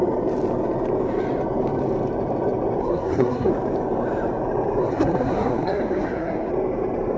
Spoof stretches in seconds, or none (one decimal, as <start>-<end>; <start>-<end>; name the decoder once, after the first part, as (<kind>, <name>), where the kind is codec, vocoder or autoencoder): 2.8-3.5 (codec, SNAC); 4.8-6.5